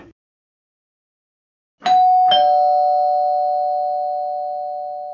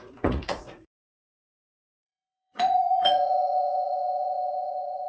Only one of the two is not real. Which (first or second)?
second